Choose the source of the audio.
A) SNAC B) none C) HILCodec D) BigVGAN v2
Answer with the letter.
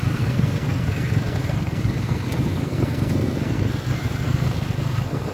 A